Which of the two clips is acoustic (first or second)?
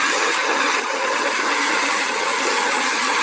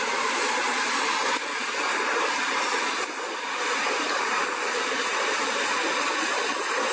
second